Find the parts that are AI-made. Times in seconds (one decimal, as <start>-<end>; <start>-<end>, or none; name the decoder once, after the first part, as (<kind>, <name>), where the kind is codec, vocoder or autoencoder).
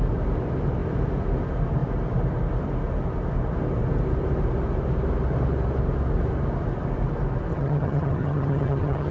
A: 7.5-9.1 (vocoder, HiFi-GAN)